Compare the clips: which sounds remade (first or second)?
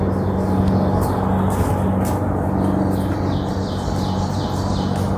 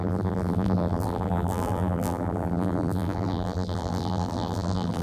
second